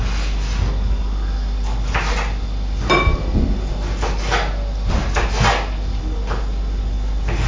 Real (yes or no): yes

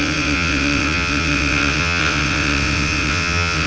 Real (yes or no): no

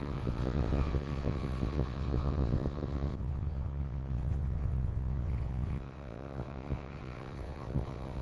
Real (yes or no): no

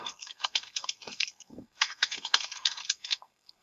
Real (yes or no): no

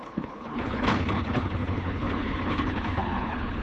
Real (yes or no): no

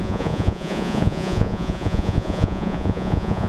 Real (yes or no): no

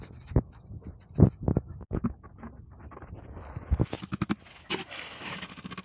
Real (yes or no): yes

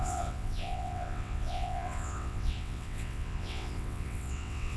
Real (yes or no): no